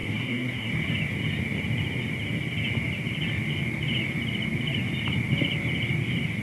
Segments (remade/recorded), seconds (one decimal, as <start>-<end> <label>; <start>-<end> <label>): 0.0-0.7 remade; 0.7-6.4 recorded